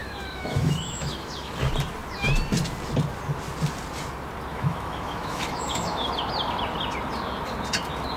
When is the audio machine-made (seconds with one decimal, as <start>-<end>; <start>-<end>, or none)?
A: 0.0-1.5; 4.5-6.1